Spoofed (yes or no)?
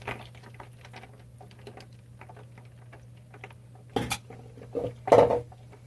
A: no